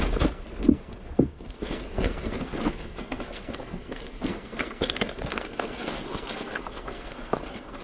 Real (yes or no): no